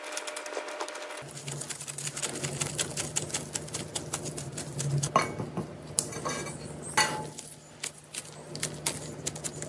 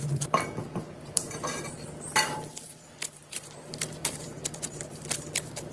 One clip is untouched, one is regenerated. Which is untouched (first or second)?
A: first